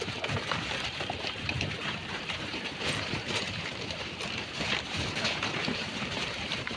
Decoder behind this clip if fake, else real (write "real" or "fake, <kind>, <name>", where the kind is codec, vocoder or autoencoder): fake, vocoder, BigVGAN v2